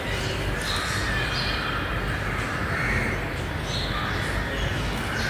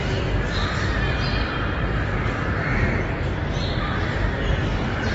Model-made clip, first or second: second